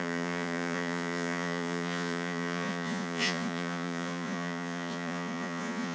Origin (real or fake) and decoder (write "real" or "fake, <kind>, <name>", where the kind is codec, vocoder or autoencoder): fake, vocoder, Vocos